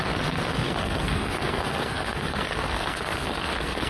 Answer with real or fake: fake